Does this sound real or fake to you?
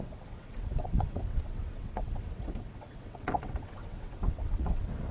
fake